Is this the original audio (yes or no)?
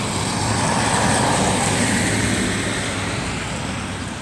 yes